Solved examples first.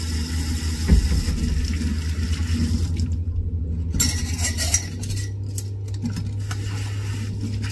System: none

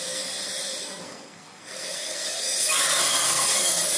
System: codec, SNAC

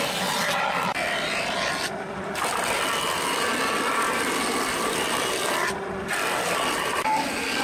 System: none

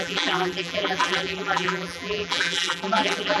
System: vocoder, BigVGAN v2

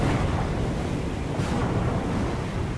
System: none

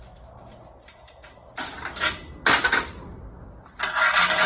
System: none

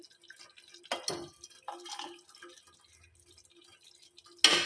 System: none